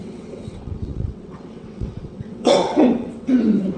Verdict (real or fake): fake